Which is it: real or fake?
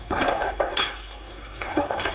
fake